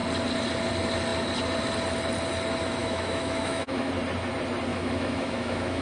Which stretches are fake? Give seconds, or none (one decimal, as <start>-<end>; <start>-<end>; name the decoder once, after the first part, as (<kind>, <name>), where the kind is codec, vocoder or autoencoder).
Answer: 2.8-3.9 (autoencoder, DAC-VAE); 4.7-5.8